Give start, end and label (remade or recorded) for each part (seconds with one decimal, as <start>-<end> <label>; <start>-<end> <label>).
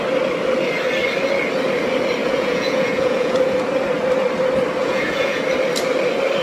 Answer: 0.0-2.2 recorded; 2.2-3.4 remade; 3.4-4.8 recorded; 4.8-5.4 remade; 5.4-6.4 recorded